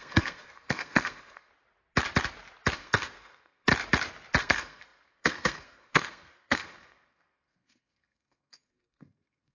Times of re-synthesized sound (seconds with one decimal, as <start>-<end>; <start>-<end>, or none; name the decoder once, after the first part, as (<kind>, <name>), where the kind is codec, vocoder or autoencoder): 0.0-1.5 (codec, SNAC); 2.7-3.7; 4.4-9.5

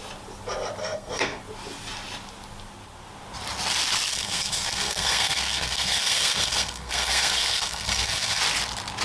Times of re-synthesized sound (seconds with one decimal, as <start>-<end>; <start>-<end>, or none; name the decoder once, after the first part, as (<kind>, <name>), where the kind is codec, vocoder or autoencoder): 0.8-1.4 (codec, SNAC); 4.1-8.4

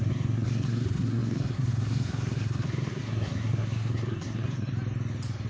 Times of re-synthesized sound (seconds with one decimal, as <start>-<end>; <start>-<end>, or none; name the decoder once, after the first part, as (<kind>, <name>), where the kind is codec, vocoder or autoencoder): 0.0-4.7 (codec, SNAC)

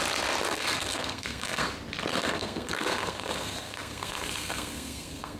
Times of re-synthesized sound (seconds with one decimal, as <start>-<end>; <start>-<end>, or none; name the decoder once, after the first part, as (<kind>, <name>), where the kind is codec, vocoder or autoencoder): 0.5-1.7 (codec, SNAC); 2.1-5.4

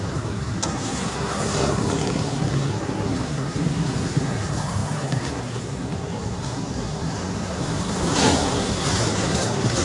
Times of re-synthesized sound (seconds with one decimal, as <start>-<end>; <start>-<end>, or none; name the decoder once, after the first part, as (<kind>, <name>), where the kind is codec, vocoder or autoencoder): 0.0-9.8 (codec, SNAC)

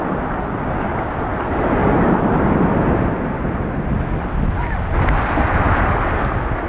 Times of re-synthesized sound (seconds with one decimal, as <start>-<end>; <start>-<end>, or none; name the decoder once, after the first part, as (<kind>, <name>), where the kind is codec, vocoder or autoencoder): none

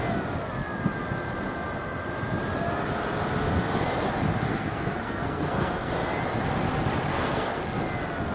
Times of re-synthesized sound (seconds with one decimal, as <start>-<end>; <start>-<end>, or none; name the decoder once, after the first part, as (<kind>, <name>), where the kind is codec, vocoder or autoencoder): 4.5-5.9 (codec, SNAC); 7.1-7.6

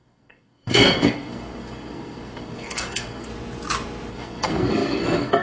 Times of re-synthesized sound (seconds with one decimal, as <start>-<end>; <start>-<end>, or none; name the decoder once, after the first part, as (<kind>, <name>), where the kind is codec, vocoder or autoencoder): 0.0-3.3 (codec, SNAC); 4.1-5.4